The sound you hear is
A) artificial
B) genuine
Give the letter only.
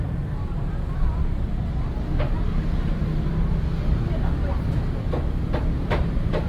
B